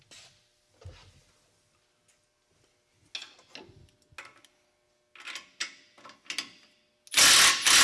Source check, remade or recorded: recorded